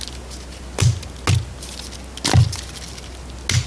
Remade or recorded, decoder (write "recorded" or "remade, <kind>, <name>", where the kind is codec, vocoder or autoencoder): recorded